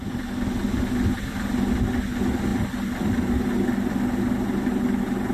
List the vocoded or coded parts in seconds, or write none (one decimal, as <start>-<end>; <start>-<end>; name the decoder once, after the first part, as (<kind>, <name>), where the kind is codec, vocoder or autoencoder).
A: 2.5-3.5 (vocoder, BigVGAN v2)